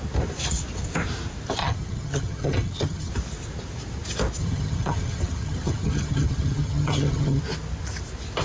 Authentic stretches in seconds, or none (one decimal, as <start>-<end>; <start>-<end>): 0.0-1.6; 3.1-4.4; 7.4-8.4